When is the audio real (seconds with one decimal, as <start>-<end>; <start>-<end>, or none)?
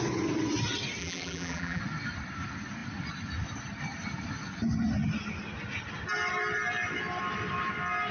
0.0-1.0; 1.8-8.1